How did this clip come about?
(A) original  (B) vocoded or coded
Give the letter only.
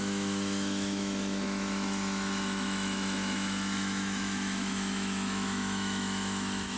B